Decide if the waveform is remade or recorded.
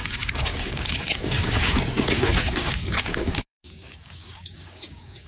remade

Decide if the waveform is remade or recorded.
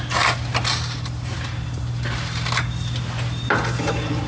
recorded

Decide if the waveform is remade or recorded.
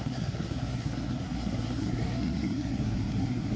remade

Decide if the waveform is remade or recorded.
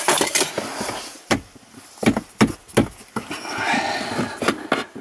recorded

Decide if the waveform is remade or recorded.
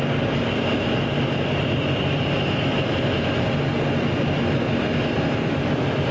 recorded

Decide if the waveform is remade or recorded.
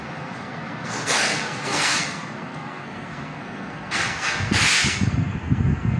remade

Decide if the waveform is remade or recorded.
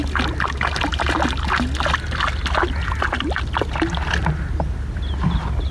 recorded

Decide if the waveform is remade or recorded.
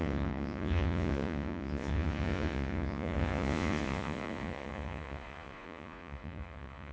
remade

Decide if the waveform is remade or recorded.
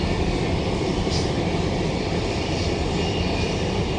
recorded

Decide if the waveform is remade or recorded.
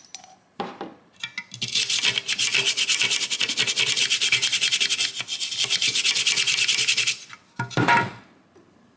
recorded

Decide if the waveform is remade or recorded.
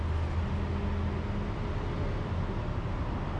recorded